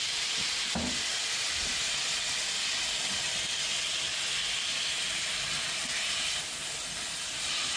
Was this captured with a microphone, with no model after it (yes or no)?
yes